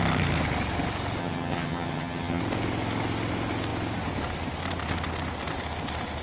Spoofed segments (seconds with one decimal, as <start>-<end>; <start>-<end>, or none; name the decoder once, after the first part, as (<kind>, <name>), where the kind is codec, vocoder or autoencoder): 1.2-2.4 (vocoder, HiFi-GAN)